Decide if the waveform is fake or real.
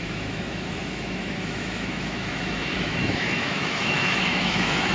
fake